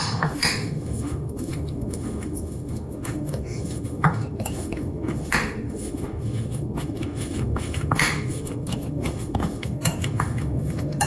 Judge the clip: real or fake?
fake